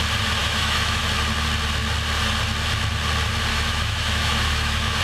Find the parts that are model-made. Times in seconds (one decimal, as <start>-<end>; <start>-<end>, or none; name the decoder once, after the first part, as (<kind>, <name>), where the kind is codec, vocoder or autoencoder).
0.4-1.0 (autoencoder, DAC-VAE); 3.5-5.0